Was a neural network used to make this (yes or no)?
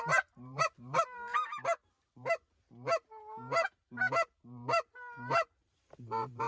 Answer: yes